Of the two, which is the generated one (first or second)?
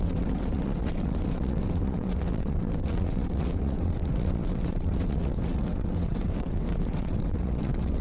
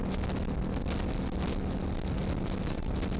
first